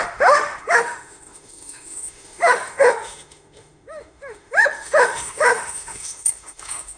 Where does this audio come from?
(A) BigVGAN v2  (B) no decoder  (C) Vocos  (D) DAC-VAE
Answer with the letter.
D